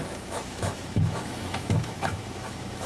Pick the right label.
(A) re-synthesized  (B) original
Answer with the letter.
A